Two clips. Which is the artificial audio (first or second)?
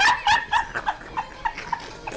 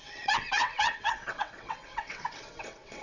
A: second